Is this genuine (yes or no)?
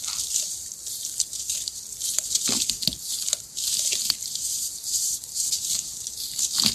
yes